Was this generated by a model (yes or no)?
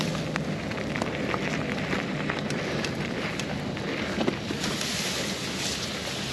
no